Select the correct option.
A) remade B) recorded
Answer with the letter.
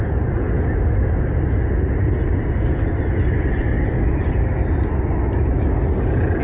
B